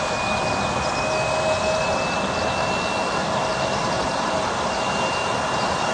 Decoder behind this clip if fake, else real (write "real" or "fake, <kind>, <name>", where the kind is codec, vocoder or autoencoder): real